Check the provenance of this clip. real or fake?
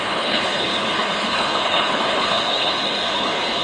fake